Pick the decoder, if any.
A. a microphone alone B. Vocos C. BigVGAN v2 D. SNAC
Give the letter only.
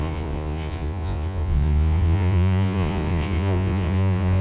B